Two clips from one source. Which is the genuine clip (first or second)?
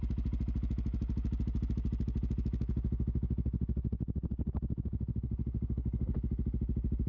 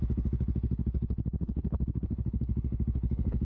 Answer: first